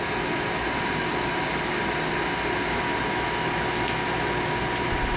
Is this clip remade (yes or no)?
no